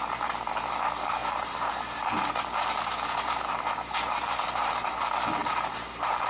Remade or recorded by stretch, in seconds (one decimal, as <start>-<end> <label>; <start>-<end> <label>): 0.0-1.2 recorded; 1.2-5.0 remade; 5.0-5.4 recorded; 5.4-6.3 remade